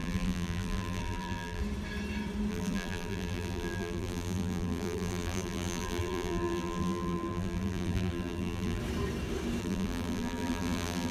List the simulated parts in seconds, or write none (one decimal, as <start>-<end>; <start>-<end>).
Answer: 0.0-1.6; 2.5-8.8; 9.6-11.1